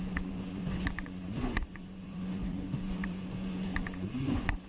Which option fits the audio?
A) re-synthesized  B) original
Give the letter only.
A